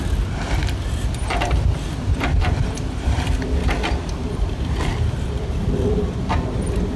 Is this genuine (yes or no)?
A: no